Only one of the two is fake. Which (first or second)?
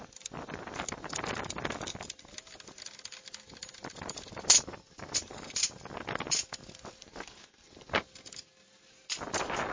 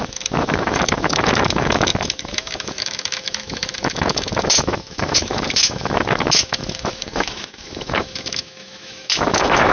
second